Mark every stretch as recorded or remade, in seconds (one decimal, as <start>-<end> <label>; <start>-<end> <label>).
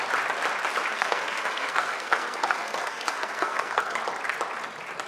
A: 0.0-0.9 recorded; 0.9-4.0 remade; 4.0-5.1 recorded